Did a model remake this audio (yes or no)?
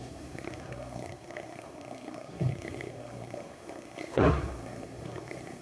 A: yes